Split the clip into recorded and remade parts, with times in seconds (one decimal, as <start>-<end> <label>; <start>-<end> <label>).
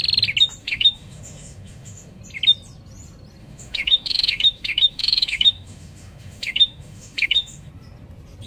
0.0-0.6 recorded; 0.6-2.2 remade; 2.2-3.4 recorded; 3.4-7.7 remade; 7.7-8.5 recorded